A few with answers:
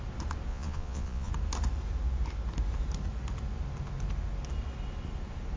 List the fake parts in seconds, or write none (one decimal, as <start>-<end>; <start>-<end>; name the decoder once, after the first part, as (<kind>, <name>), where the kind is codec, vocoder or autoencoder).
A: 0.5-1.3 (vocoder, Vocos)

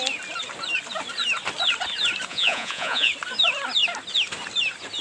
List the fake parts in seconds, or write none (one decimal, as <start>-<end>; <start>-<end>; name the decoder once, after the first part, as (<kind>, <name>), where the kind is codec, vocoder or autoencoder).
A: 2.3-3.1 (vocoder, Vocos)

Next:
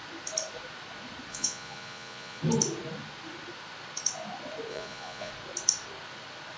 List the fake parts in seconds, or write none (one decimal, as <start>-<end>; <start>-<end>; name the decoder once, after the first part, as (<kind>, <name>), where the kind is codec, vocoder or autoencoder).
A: 1.3-2.4 (vocoder, Vocos); 4.7-5.3

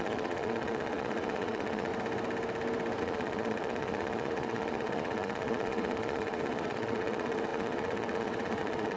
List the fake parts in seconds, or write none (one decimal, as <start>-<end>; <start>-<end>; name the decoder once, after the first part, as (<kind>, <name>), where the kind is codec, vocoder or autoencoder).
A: 0.0-1.9 (vocoder, Vocos); 3.0-9.0

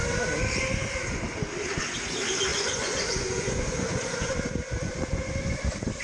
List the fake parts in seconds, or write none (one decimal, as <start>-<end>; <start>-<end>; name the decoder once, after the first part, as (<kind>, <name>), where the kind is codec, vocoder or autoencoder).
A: 2.5-5.6 (vocoder, Vocos)